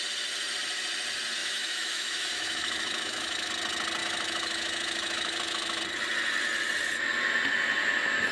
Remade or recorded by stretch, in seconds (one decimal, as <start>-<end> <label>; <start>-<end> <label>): 0.0-1.4 recorded; 1.4-3.5 remade; 3.5-4.0 recorded; 4.0-5.8 remade; 5.8-8.3 recorded